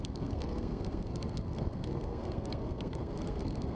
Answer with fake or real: fake